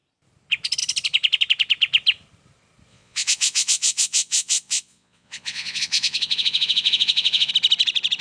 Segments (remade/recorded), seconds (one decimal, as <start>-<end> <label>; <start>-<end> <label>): 0.0-2.9 recorded; 2.9-7.5 remade; 7.5-8.2 recorded